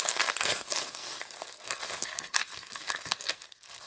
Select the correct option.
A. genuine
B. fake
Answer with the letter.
B